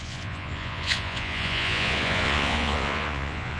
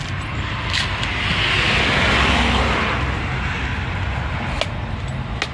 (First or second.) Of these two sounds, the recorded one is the second